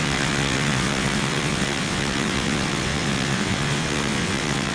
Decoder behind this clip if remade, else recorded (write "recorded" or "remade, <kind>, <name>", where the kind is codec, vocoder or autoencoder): remade, vocoder, WaveNeXt